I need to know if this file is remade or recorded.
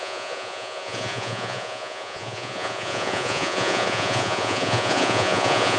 remade